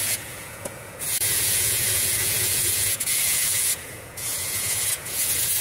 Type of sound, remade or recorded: remade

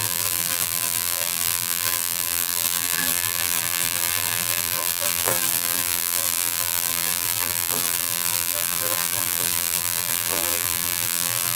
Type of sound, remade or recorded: remade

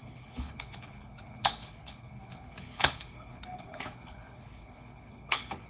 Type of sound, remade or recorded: remade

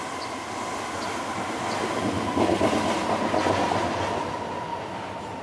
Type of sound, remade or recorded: recorded